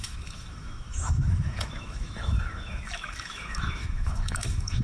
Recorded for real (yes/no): no